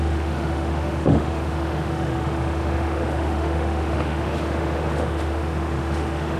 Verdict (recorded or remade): remade